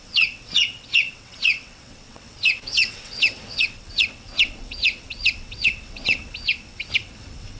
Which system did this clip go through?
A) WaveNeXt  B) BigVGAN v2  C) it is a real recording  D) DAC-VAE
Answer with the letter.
A